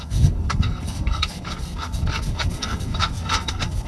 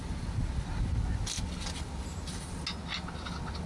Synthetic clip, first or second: first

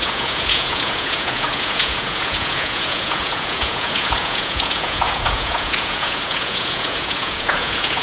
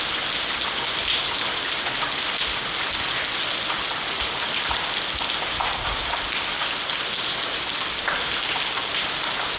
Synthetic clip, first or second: first